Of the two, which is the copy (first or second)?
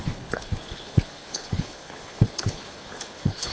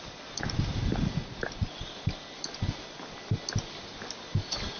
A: first